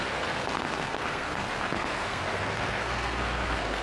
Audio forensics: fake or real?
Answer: fake